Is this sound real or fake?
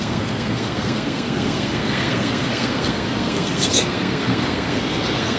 fake